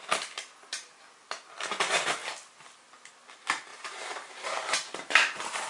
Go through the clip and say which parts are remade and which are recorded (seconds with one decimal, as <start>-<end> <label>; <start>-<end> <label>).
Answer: 0.0-3.7 recorded; 3.7-5.7 remade